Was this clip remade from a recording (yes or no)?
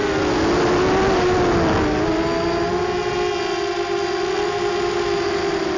no